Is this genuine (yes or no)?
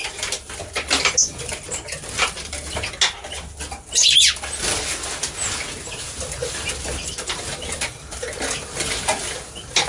yes